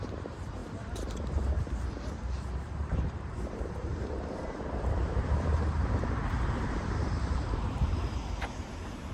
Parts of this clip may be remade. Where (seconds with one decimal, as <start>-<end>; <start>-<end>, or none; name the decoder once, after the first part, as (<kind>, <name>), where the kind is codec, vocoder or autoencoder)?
0.0-9.1 (vocoder, BigVGAN v2)